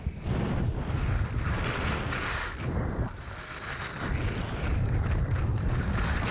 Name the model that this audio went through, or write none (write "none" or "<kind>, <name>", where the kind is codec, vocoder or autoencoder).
none